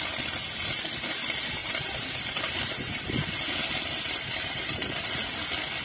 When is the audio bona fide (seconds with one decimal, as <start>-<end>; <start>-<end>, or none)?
0.0-1.6; 4.8-5.8

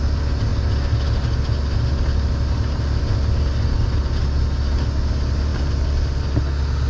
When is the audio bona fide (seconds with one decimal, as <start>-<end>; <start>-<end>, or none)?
0.0-6.9

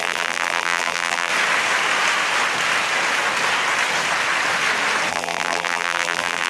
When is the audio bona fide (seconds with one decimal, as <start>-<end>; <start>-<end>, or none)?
1.3-5.1

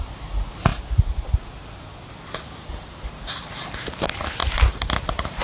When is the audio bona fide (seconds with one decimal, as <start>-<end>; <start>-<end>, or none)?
0.0-5.4

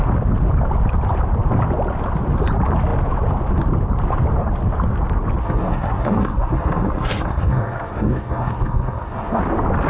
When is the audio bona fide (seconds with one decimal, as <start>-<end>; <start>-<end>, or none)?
0.0-5.4; 9.4-9.9

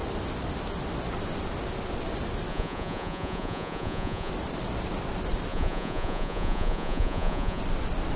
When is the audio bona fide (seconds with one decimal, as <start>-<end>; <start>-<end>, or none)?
0.0-2.5; 4.3-5.5; 7.6-8.2